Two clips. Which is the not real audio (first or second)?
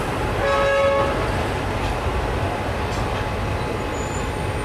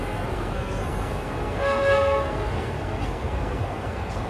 second